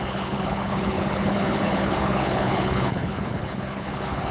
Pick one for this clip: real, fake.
fake